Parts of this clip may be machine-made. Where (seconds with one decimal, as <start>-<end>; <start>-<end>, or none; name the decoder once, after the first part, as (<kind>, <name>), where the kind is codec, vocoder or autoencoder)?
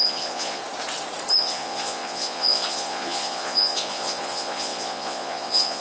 0.0-0.6 (vocoder, Vocos); 1.4-5.8